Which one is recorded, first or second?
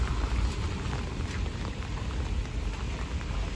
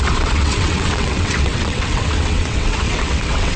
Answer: first